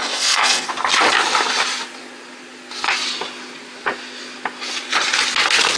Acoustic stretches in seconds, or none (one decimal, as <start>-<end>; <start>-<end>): 0.7-5.8